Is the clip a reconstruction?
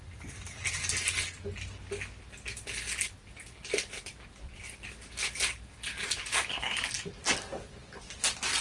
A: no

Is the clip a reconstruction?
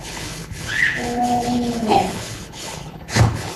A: yes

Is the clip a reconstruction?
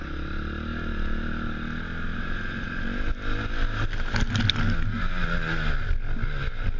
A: no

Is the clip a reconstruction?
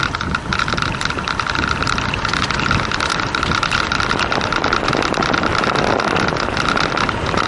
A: no